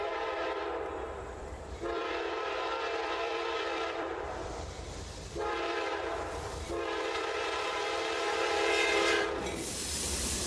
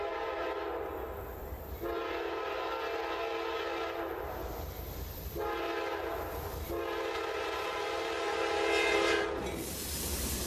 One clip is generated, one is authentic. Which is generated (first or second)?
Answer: first